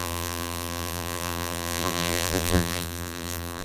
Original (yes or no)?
no